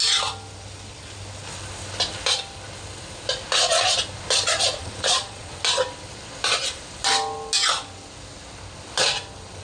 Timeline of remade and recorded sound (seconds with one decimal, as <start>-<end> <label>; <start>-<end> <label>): 0.0-4.8 recorded; 4.8-5.5 remade; 5.5-9.6 recorded